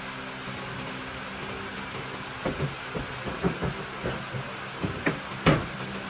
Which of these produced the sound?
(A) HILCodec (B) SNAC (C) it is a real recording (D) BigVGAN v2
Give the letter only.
C